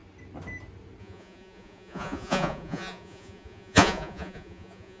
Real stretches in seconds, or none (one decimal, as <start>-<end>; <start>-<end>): 0.0-1.0